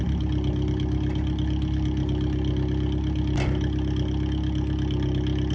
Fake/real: real